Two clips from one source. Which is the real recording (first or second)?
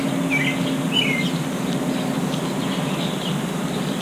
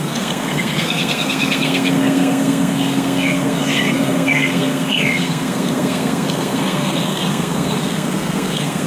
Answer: first